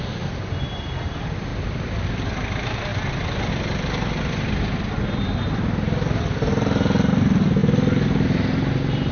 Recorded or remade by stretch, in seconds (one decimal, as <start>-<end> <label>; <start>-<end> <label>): 0.0-1.5 recorded; 1.5-2.2 remade; 2.2-2.9 recorded; 2.9-3.5 remade; 3.5-9.1 recorded